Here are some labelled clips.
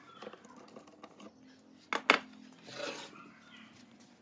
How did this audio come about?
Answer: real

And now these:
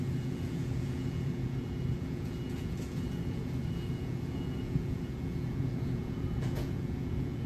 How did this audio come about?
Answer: fake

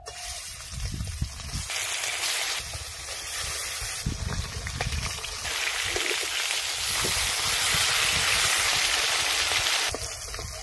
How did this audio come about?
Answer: real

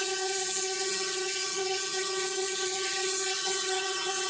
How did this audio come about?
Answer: fake